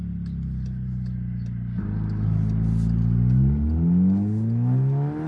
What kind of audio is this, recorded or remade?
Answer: recorded